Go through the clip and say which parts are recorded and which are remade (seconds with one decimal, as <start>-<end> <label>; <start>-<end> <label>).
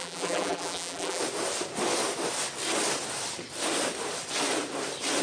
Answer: 0.0-1.2 remade; 1.2-5.2 recorded